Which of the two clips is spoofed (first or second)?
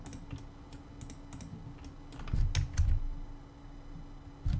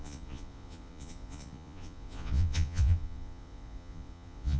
second